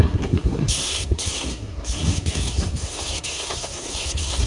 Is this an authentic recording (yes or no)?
no